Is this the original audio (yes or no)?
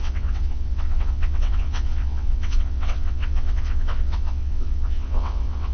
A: no